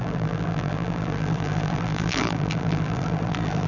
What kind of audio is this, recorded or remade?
remade